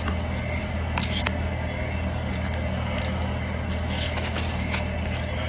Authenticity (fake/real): real